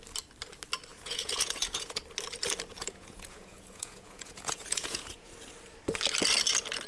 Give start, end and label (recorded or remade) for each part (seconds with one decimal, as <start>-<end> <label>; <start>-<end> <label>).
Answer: 0.0-0.9 recorded; 0.9-2.0 remade; 2.0-2.8 recorded; 2.8-5.3 remade; 5.3-6.9 recorded